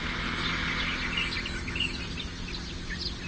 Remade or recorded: recorded